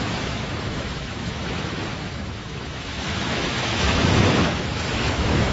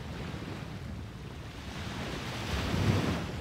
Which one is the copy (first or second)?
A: first